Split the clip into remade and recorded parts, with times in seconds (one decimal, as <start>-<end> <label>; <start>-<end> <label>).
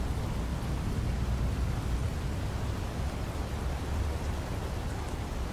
0.0-5.5 recorded